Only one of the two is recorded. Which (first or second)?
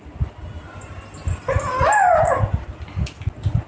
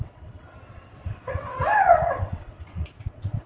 first